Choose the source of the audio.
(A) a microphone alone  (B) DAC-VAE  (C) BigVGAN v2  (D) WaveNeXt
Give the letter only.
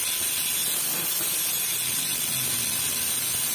A